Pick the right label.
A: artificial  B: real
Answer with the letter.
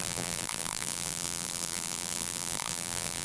A